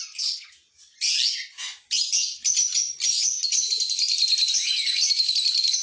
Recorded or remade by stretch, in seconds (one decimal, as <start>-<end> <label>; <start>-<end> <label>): 0.0-5.8 recorded